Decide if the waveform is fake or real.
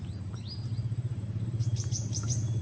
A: fake